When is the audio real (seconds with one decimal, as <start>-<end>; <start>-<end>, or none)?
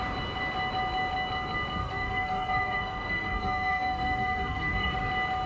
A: 0.0-1.8; 5.1-5.5